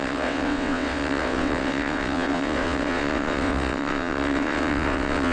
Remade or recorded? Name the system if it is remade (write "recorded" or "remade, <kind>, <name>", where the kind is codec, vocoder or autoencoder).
remade, vocoder, WaveNeXt